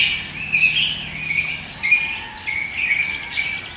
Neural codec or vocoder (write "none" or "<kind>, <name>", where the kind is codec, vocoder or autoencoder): none